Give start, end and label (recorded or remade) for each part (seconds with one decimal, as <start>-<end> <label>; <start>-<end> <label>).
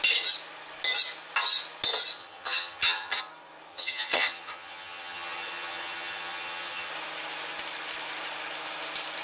0.0-2.2 recorded; 2.2-3.2 remade; 3.2-3.7 recorded; 3.7-6.9 remade; 6.9-9.2 recorded